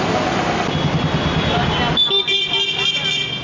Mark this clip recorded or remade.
recorded